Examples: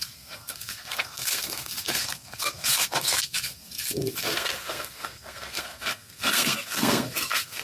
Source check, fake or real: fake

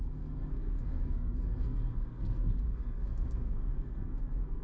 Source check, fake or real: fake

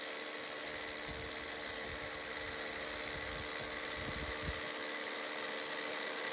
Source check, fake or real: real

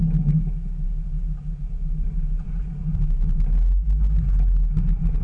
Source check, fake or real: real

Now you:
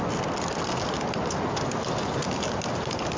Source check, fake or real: real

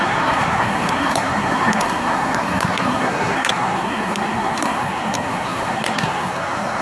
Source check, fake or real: fake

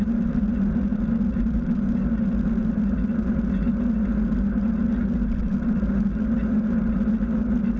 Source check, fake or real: real